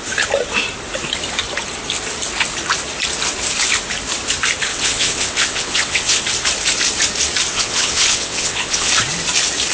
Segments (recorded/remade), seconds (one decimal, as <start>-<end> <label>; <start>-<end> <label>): 0.0-4.7 recorded; 4.7-6.2 remade; 6.2-7.5 recorded; 7.5-8.9 remade; 8.9-9.7 recorded